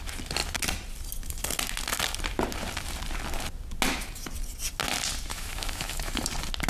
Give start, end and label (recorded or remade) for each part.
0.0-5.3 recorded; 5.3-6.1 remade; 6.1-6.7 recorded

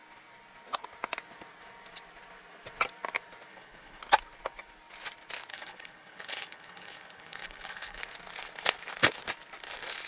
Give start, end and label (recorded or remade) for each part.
0.0-3.5 recorded; 3.5-4.0 remade; 4.0-5.5 recorded; 5.5-8.0 remade; 8.0-10.1 recorded

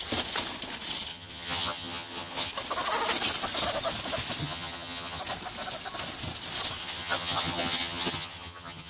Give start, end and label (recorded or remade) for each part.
0.0-1.1 recorded; 1.1-2.5 remade; 2.5-4.4 recorded; 4.4-5.2 remade; 5.2-6.8 recorded; 6.8-8.9 remade

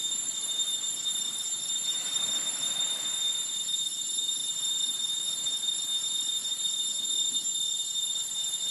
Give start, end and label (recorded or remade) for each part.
0.0-8.7 recorded

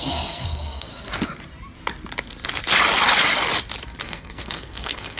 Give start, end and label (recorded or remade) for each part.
0.0-0.9 remade; 0.9-4.0 recorded; 4.0-5.2 remade

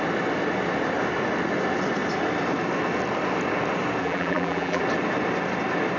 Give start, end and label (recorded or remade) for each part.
0.0-4.0 recorded; 4.0-4.8 remade; 4.8-6.0 recorded